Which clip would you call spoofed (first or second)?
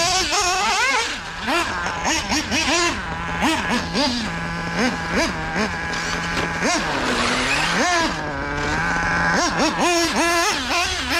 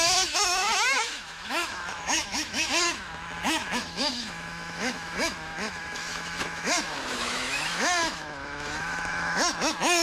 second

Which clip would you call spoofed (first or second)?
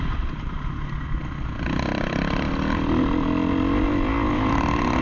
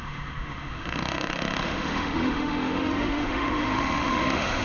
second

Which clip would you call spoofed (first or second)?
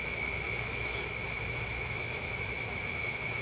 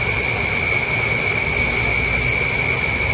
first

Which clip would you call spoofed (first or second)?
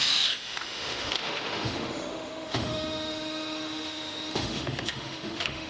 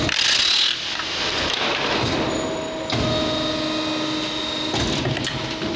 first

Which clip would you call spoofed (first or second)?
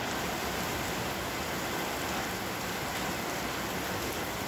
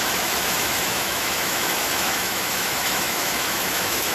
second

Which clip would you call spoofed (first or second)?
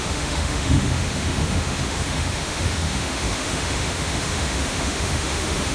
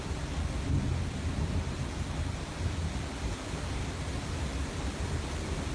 first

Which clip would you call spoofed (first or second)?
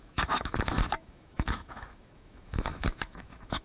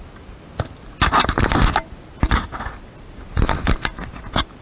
first